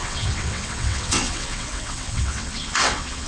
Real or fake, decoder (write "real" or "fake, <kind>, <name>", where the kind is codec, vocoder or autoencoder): fake, vocoder, WaveNeXt